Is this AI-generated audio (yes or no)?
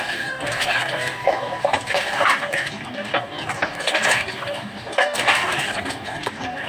yes